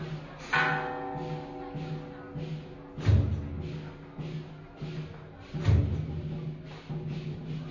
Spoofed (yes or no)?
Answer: no